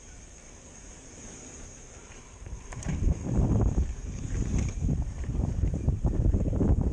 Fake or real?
fake